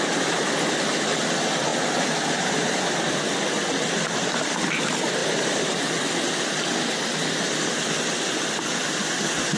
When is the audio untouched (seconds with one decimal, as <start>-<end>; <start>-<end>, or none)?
0.0-9.6